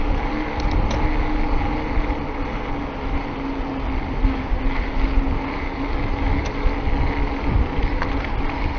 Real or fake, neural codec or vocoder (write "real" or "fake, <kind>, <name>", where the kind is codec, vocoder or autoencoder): real